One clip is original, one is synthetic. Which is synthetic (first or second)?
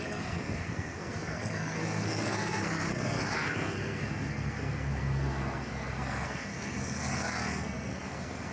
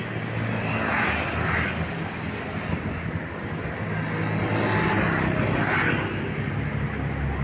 first